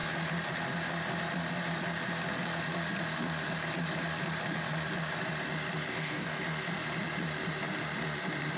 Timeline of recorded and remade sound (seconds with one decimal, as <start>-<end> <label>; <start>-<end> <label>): 0.0-5.9 recorded; 5.9-6.4 remade; 6.4-8.6 recorded